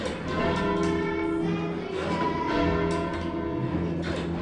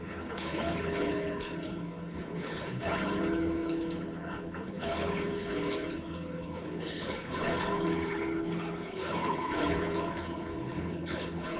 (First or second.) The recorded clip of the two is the first